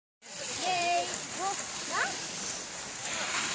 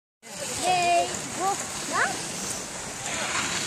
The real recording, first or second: second